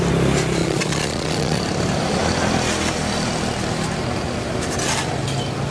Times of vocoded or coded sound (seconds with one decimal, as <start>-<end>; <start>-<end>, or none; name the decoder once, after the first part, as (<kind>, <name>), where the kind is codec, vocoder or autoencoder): 0.6-1.6 (vocoder, Vocos)